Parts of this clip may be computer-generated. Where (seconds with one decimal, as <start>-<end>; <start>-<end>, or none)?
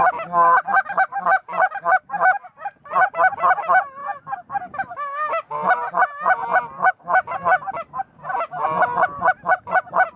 none